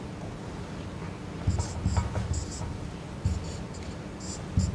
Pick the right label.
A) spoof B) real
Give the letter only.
B